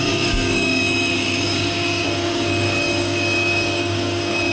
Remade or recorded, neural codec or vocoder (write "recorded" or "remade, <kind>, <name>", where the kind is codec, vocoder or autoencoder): remade, codec, DAC